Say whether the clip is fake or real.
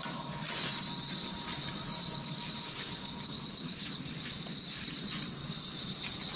real